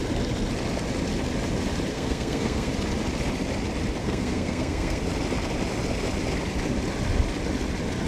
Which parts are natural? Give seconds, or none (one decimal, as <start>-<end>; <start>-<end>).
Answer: 0.0-1.9; 2.7-4.0; 5.0-8.1